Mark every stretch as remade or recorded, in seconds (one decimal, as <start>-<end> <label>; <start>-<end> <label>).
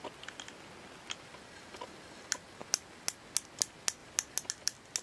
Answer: 0.0-5.0 recorded